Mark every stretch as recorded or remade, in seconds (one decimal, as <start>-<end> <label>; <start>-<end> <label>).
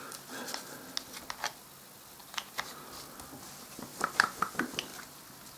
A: 0.0-2.2 recorded; 2.2-2.9 remade; 2.9-3.9 recorded; 3.9-4.5 remade; 4.5-5.6 recorded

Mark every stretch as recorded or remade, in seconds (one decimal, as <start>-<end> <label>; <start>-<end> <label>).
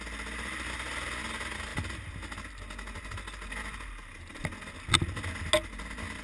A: 0.0-6.2 recorded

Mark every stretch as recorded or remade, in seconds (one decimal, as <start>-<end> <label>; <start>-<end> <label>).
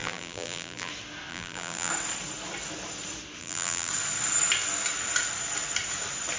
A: 0.0-0.9 remade; 0.9-1.3 recorded; 1.3-1.9 remade; 1.9-3.4 recorded; 3.4-3.9 remade; 3.9-6.4 recorded